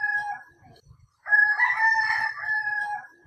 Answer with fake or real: fake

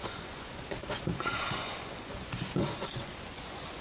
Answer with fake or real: fake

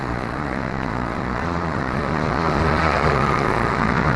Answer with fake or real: fake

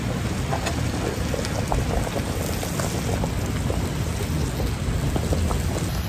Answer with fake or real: real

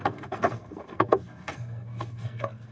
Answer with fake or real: fake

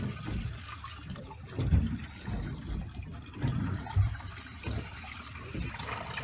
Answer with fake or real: real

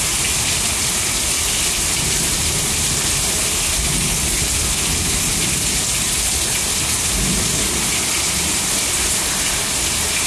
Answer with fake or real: real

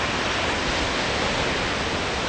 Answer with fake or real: real